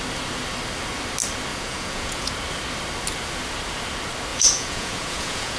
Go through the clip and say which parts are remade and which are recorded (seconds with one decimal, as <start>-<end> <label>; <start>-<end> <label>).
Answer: 0.0-1.5 recorded; 1.5-2.3 remade; 2.3-4.3 recorded; 4.3-5.6 remade